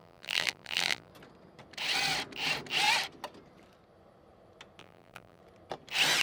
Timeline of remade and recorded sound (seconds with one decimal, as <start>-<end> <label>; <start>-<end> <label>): 0.0-1.1 remade; 1.1-4.8 recorded; 4.8-5.4 remade; 5.4-6.2 recorded